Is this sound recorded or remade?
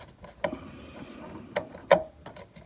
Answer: recorded